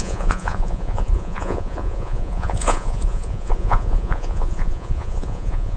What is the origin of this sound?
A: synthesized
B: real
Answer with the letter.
A